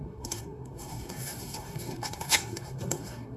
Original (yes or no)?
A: no